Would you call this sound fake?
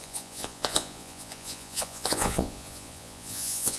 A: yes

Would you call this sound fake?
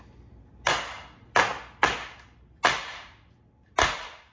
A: no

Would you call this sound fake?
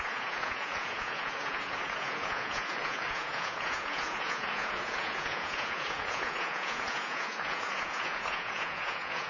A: yes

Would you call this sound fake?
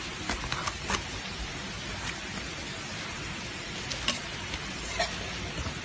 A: no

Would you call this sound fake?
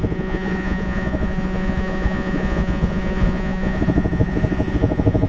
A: yes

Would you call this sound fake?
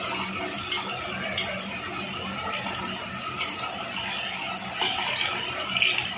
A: no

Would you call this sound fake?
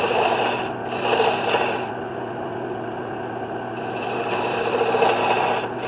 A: no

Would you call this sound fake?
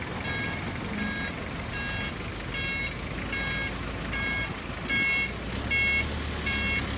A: no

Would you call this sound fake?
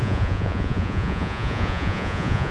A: yes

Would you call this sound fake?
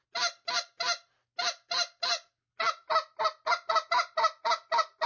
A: no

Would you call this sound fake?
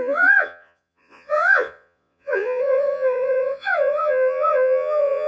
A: yes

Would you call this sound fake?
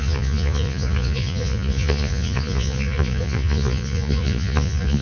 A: yes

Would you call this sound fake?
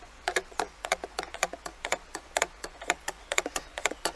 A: yes